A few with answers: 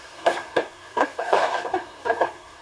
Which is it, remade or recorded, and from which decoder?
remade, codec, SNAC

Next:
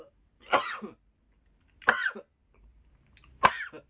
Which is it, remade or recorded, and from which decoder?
recorded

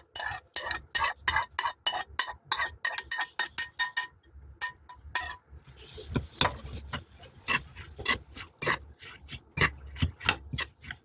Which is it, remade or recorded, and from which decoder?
recorded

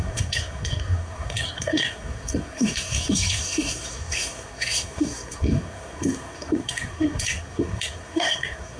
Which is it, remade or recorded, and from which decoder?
remade, codec, SNAC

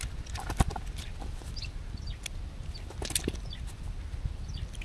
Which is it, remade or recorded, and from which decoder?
recorded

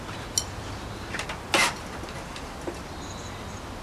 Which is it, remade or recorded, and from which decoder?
recorded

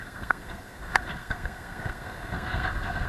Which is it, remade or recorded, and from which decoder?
remade, codec, SNAC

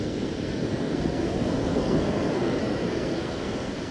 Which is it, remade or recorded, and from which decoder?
remade, codec, SNAC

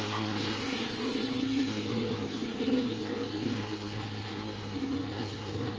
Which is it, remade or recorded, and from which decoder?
remade, codec, SNAC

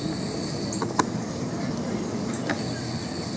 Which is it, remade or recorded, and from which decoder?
recorded